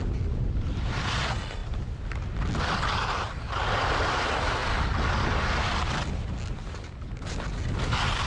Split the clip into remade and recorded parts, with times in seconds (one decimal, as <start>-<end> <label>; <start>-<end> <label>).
0.0-8.3 recorded